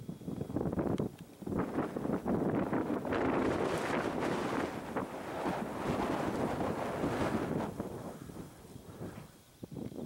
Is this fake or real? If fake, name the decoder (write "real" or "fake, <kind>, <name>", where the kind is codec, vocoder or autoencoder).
real